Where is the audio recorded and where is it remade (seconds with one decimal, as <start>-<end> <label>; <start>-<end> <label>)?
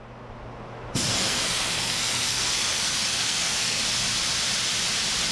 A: 0.0-1.1 recorded; 1.1-3.8 remade; 3.8-5.3 recorded